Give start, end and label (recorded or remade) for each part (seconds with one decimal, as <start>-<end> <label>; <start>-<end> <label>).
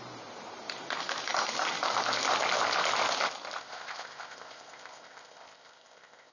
0.0-3.6 recorded; 3.6-6.3 remade